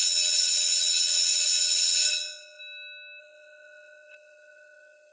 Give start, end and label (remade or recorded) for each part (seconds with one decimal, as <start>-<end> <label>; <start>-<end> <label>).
0.0-2.6 remade; 2.6-3.2 recorded; 3.2-5.1 remade